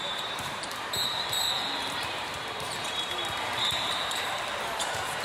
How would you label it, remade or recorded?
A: remade